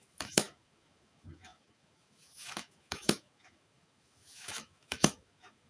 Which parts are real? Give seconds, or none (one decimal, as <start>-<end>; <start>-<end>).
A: none